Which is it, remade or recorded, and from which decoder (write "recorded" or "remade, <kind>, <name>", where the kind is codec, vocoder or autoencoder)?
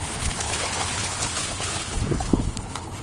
remade, codec, HILCodec